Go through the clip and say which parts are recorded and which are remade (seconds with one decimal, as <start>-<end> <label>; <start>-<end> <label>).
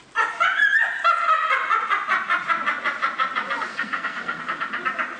0.0-3.7 recorded; 3.7-4.4 remade; 4.4-5.2 recorded